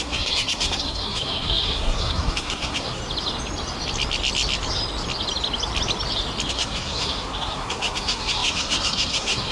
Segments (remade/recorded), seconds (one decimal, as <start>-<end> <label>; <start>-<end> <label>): 0.0-3.0 remade; 3.0-6.5 recorded; 6.5-9.5 remade